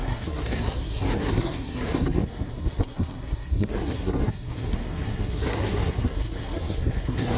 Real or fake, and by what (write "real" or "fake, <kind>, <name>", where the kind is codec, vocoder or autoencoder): fake, codec, SNAC